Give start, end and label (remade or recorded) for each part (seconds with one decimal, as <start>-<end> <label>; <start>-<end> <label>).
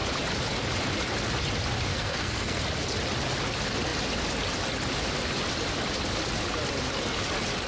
0.0-1.9 recorded; 1.9-2.6 remade; 2.6-7.7 recorded